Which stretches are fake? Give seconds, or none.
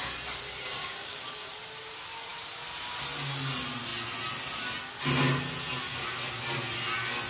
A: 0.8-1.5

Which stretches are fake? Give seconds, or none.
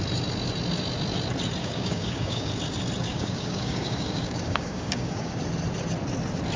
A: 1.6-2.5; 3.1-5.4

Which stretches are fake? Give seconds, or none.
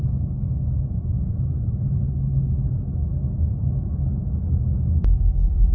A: 0.0-0.7; 3.0-5.7